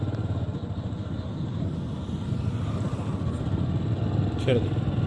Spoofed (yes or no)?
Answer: no